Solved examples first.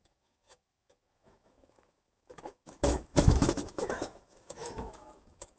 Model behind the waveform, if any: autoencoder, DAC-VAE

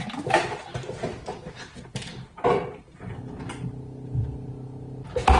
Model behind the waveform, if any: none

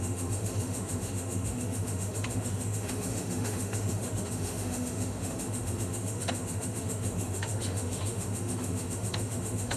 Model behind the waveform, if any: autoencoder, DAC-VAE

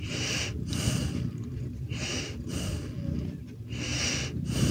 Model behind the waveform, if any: none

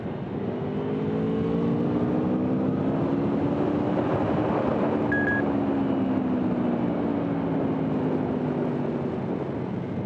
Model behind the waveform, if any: none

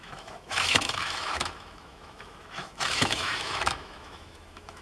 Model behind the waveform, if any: autoencoder, DAC-VAE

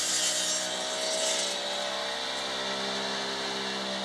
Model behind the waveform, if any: none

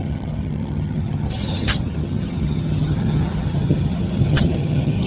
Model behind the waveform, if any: vocoder, HiFi-GAN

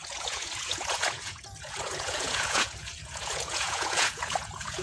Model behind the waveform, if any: vocoder, Vocos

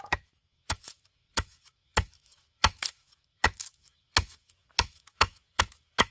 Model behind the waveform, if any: autoencoder, DAC-VAE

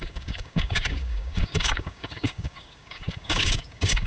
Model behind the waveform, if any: codec, DAC